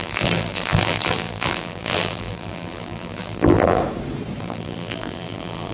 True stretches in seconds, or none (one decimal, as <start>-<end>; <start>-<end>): 3.8-4.4